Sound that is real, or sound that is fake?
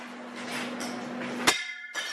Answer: real